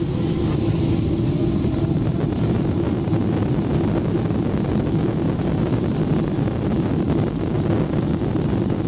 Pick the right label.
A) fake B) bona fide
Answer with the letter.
A